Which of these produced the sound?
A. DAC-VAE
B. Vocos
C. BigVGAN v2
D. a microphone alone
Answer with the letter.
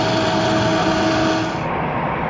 D